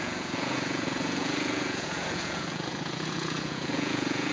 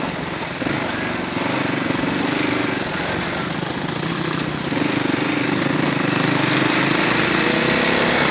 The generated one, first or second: first